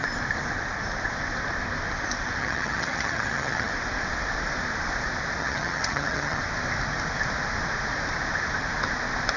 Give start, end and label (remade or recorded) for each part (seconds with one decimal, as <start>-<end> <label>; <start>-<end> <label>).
0.0-2.4 recorded; 2.4-3.7 remade; 3.7-5.4 recorded; 5.4-6.4 remade; 6.4-9.4 recorded